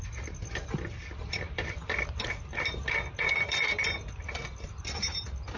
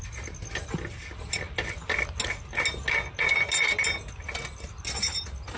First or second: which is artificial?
first